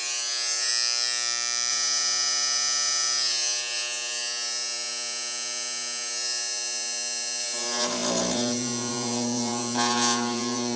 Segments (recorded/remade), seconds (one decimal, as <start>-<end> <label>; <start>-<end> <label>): 0.0-0.7 remade; 0.7-1.7 recorded; 1.7-10.8 remade